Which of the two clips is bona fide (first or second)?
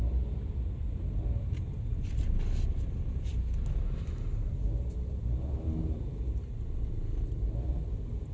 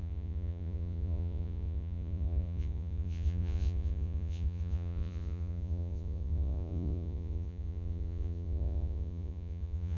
first